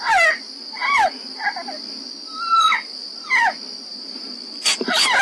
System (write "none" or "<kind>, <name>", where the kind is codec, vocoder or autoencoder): vocoder, BigVGAN v2